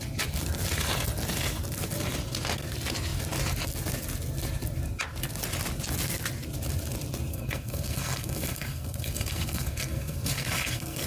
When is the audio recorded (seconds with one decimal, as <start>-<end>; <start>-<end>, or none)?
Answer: 0.0-7.3